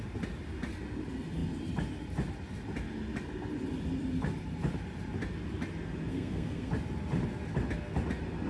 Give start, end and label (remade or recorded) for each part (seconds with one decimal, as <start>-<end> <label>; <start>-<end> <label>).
0.0-6.1 recorded; 6.1-6.7 remade; 6.7-8.5 recorded